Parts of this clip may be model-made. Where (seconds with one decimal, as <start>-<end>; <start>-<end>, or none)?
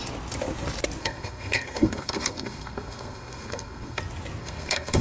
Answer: 1.0-4.0; 4.4-5.0